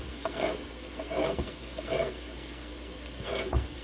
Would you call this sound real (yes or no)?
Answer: no